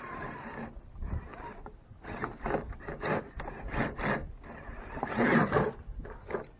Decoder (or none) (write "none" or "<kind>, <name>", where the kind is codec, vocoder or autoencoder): none